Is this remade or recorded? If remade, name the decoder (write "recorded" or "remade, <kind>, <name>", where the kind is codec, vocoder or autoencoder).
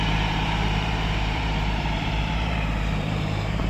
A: remade, vocoder, BigVGAN v2